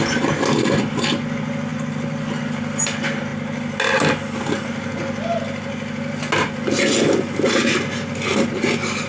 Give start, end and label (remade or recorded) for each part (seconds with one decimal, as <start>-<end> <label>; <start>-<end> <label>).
0.0-9.1 recorded